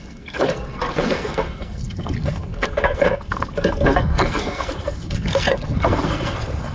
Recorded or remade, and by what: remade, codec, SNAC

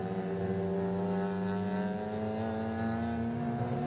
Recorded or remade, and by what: recorded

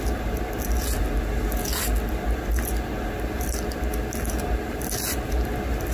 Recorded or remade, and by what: recorded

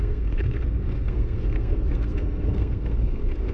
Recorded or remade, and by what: remade, codec, SNAC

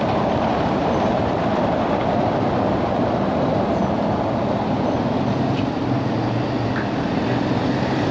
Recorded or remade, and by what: recorded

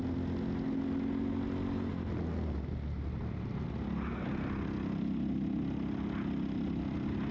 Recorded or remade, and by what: recorded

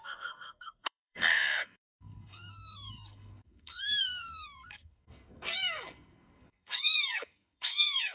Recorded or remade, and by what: remade, codec, SNAC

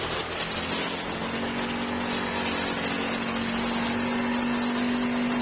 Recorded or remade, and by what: recorded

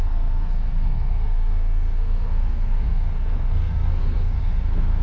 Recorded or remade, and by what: remade, codec, SNAC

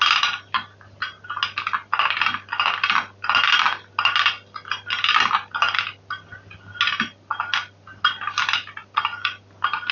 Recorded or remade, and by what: recorded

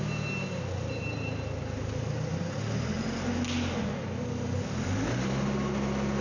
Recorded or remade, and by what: recorded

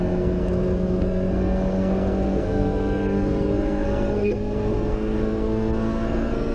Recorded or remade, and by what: remade, codec, SNAC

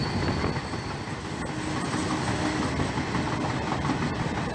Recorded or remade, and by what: recorded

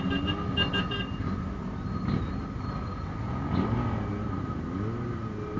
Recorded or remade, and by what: recorded